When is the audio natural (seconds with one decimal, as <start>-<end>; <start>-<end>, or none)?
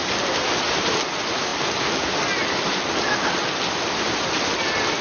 0.0-5.0